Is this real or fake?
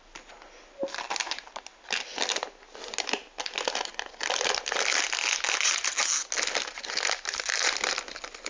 real